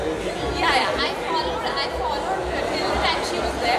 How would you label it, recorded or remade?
recorded